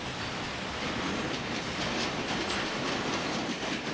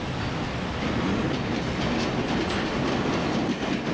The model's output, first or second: first